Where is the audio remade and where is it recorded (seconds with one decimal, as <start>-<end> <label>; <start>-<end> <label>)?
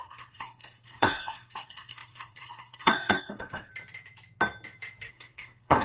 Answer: 0.0-3.7 remade; 3.7-5.1 recorded; 5.1-5.8 remade